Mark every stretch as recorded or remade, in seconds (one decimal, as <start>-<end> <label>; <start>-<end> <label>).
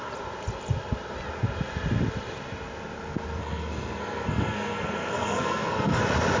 0.0-3.4 recorded; 3.4-6.0 remade; 6.0-6.4 recorded